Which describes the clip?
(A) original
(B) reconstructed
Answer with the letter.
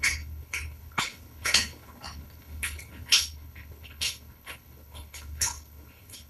B